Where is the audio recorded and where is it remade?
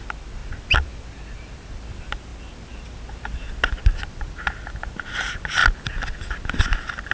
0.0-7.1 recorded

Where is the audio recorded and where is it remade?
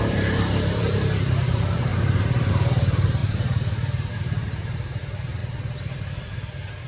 0.0-5.4 remade; 5.4-6.9 recorded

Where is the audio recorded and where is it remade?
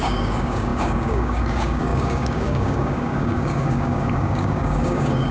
0.0-5.3 remade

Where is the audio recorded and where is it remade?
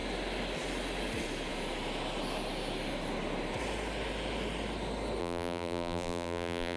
0.0-5.2 recorded; 5.2-6.8 remade